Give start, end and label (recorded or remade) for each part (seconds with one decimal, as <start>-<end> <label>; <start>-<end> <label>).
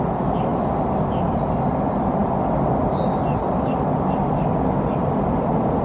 0.0-5.8 recorded